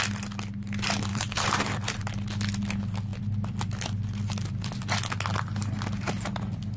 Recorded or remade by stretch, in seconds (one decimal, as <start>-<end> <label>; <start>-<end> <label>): 0.0-1.1 recorded; 1.1-2.0 remade; 2.0-6.8 recorded